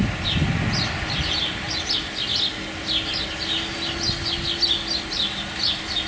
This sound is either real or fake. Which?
real